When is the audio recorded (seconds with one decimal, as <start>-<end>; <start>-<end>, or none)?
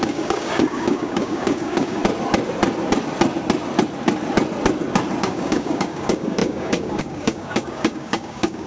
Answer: 2.0-5.2